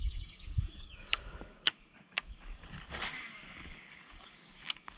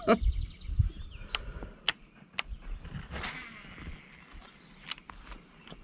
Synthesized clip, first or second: first